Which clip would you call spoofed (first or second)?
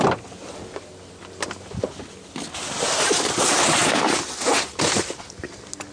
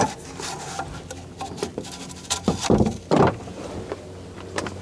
second